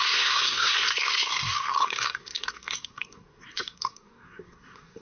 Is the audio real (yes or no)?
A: no